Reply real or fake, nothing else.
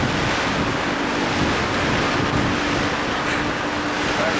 real